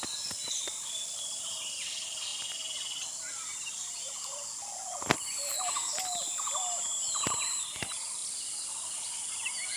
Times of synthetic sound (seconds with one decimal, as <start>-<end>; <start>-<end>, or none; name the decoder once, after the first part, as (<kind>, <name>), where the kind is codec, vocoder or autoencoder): 0.0-2.3 (vocoder, BigVGAN v2); 3.3-4.4; 5.0-9.8